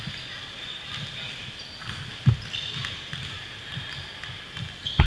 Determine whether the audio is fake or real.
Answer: real